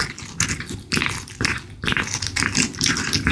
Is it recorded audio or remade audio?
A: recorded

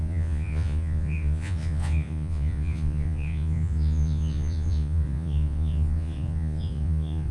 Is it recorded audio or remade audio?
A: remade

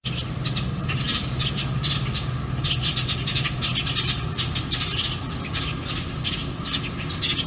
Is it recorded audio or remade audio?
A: recorded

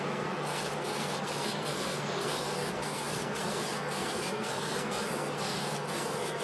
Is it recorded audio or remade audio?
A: remade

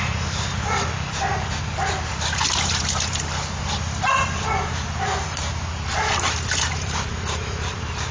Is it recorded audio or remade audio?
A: remade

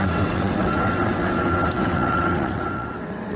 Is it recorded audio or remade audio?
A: remade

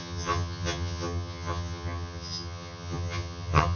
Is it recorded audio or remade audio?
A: remade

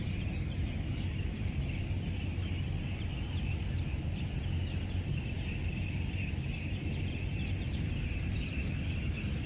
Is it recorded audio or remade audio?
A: recorded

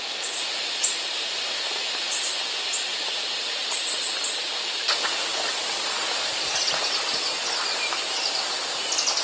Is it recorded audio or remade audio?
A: recorded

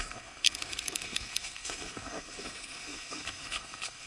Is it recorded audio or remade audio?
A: remade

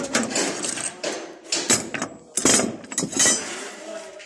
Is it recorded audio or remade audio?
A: recorded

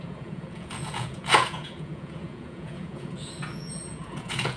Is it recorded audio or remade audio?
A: remade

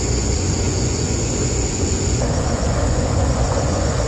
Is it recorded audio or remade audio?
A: remade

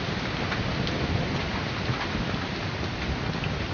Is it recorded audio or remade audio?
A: recorded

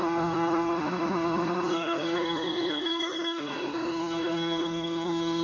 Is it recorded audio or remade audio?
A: remade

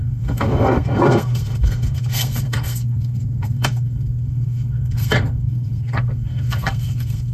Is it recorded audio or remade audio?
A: remade